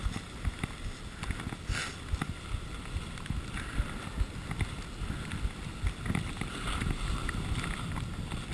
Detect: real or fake real